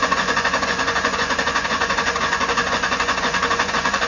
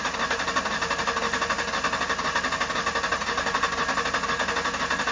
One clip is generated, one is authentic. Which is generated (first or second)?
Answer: first